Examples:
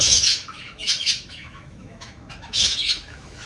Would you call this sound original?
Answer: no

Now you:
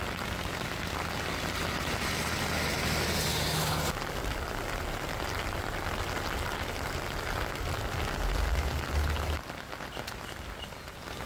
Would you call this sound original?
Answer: yes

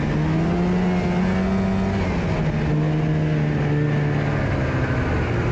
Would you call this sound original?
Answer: yes